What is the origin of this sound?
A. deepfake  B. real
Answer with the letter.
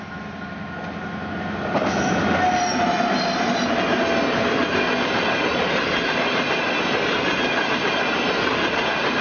B